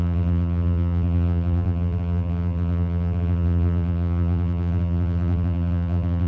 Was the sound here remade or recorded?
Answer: remade